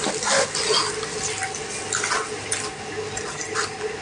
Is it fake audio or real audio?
real